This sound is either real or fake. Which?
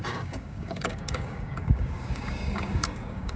fake